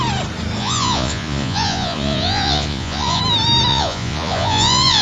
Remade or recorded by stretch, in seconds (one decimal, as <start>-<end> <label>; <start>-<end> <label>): 0.0-0.6 recorded; 0.6-3.2 remade; 3.2-3.7 recorded; 3.7-5.0 remade